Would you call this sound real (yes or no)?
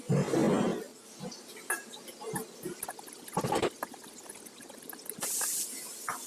yes